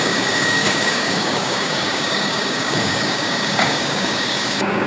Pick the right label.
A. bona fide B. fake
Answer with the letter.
B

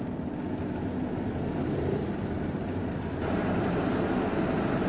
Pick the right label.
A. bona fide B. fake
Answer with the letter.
A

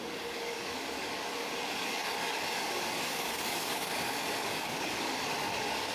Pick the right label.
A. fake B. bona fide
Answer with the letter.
A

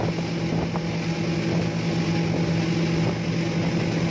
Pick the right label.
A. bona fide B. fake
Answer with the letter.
A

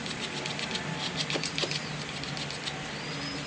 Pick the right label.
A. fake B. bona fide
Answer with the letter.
B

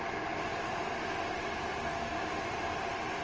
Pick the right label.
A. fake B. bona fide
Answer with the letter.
B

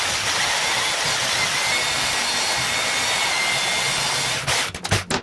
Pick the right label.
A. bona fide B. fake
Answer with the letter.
A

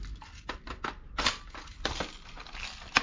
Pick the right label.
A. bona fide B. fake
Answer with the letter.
A